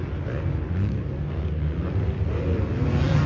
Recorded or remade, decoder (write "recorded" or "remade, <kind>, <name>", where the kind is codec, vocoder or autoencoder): recorded